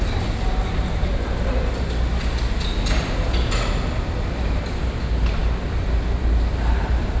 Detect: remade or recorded recorded